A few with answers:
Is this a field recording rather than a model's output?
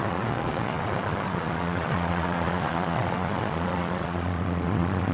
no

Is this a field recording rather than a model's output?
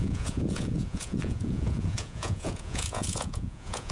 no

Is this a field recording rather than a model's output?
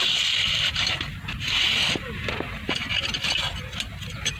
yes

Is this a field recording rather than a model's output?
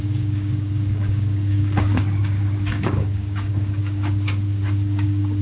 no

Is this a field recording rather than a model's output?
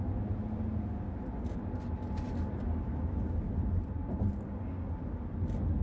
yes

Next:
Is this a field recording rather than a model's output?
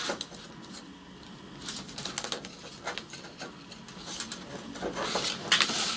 yes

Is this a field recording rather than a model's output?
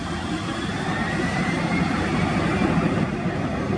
no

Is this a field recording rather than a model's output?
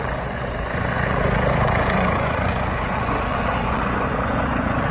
no